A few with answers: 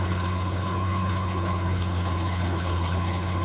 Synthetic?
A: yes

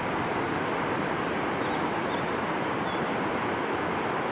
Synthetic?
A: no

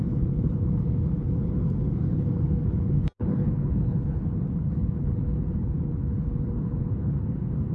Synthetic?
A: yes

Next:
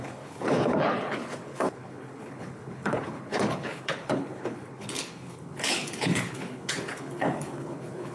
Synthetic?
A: yes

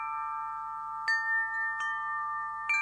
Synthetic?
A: no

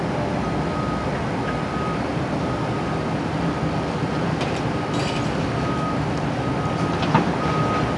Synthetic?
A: no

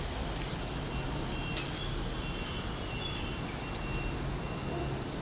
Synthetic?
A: no